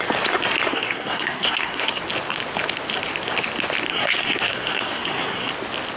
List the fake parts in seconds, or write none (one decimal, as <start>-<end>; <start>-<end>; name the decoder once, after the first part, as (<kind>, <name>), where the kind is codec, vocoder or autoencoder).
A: 0.7-2.0 (codec, SNAC); 3.9-5.5